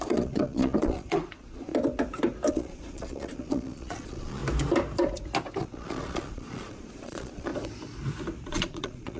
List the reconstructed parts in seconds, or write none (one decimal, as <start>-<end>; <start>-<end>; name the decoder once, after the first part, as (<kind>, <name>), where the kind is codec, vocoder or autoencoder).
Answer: 0.0-1.7 (vocoder, Vocos); 2.5-4.4; 5.6-7.5; 8.5-9.2